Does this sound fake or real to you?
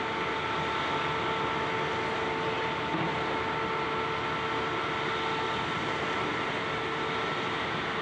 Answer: real